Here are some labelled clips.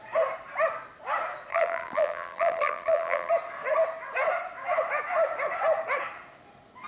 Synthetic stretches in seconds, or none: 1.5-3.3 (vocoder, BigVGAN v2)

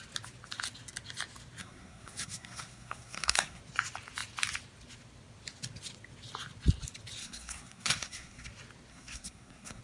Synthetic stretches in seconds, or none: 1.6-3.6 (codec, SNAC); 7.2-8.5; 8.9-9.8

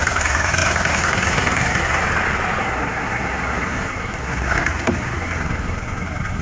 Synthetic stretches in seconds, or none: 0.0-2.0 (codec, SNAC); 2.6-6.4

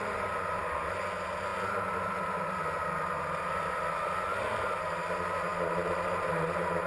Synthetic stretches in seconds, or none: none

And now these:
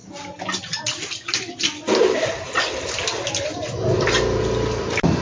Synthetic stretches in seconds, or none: none